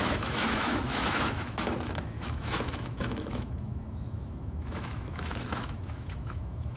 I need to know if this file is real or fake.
fake